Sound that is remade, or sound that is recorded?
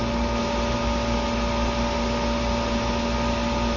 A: recorded